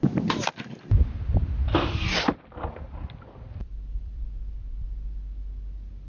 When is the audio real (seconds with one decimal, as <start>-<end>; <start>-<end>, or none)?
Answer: 0.0-3.6; 4.2-6.1